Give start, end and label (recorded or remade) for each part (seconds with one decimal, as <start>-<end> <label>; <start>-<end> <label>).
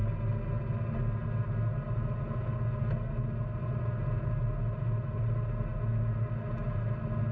0.0-7.3 recorded